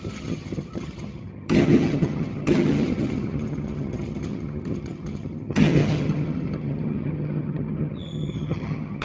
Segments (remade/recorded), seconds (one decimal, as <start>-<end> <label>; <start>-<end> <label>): 0.0-9.0 remade